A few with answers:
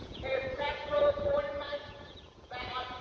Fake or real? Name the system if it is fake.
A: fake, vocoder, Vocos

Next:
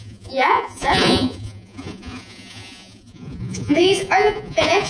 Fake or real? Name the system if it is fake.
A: fake, vocoder, Vocos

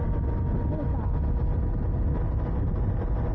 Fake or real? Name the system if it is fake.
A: real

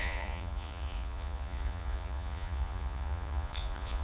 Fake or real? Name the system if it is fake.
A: fake, vocoder, Vocos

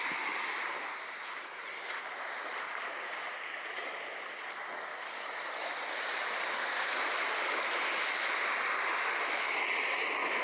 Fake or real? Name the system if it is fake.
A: real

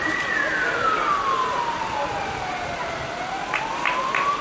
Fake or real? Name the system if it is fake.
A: real